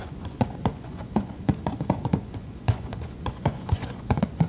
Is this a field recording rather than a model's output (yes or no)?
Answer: no